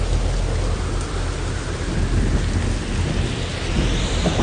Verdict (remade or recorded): recorded